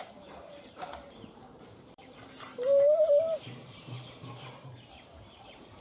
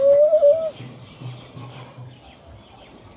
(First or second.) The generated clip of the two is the first